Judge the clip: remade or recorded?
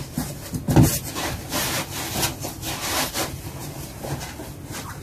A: recorded